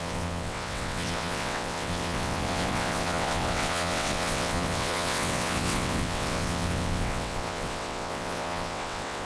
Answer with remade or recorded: remade